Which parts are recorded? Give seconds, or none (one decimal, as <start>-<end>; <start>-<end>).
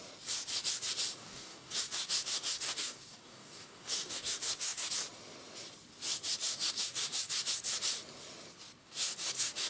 0.0-1.2; 4.9-6.3; 7.3-8.8